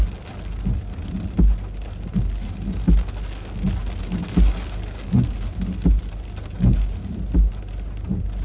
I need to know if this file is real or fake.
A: real